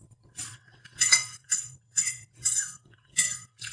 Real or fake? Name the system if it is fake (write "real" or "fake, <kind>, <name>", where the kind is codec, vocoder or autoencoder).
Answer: fake, vocoder, WaveNeXt